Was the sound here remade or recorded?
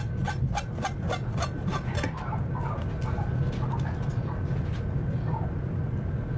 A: recorded